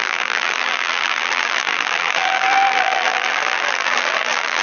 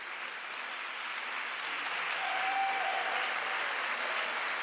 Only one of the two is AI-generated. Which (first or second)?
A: first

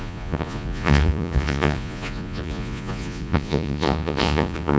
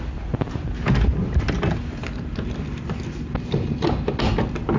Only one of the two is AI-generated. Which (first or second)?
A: first